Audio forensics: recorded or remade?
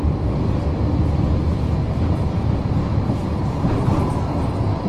recorded